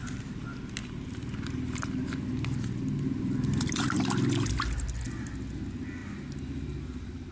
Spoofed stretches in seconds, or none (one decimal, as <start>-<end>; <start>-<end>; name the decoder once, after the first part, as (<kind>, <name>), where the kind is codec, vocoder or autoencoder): none